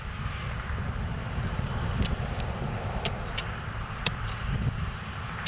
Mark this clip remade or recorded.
remade